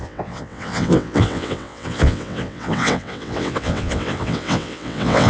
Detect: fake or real fake